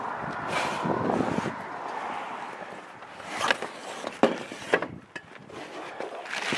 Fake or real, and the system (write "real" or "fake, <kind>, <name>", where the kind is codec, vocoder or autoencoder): real